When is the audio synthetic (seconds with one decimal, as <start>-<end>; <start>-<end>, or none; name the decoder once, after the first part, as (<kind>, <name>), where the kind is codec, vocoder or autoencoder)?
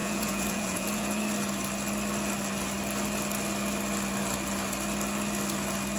0.0-1.2 (vocoder, Vocos)